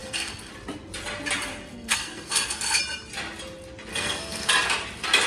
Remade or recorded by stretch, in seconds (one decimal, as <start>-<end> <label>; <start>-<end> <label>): 0.0-0.5 remade; 0.5-1.7 recorded; 1.7-2.8 remade; 2.8-3.9 recorded; 3.9-4.5 remade; 4.5-5.3 recorded